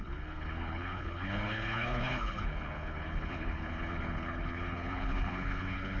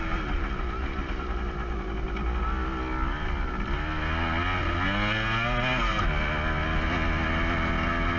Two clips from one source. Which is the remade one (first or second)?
first